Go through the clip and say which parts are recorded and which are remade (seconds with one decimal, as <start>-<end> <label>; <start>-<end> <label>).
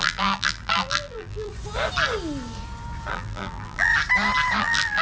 0.0-1.5 remade; 1.5-3.1 recorded; 3.1-3.9 remade; 3.9-4.6 recorded; 4.6-5.0 remade